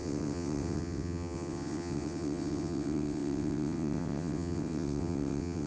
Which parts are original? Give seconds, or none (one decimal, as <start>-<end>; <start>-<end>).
none